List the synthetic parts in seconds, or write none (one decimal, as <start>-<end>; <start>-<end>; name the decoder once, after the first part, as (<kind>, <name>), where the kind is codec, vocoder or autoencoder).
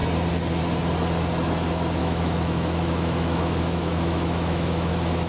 2.0-5.3 (autoencoder, DAC-VAE)